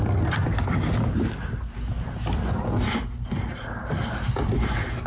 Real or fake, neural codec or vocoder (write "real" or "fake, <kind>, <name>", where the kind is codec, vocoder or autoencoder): real